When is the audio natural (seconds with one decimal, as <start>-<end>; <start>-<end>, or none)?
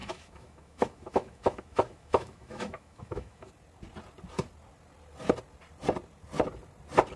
3.5-7.2